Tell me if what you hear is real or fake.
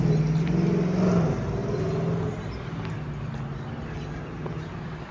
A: real